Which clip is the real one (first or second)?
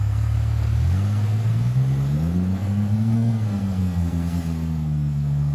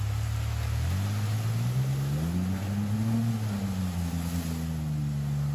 second